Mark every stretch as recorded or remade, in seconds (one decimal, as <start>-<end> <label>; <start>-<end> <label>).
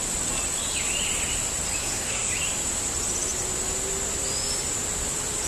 0.0-1.8 recorded; 1.8-2.3 remade; 2.3-5.5 recorded